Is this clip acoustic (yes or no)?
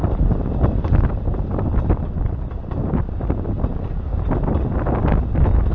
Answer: yes